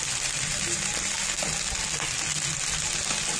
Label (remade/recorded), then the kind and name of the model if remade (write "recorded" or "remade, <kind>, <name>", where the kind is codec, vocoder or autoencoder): recorded